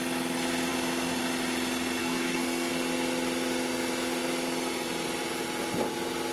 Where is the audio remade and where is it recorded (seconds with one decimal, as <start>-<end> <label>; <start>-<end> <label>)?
0.0-2.0 recorded; 2.0-2.7 remade; 2.7-6.3 recorded